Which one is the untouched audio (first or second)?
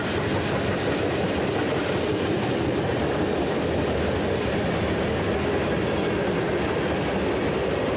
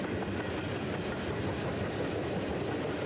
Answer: first